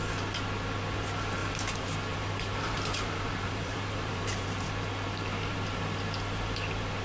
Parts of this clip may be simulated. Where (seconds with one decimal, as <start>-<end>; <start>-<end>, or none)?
1.4-4.7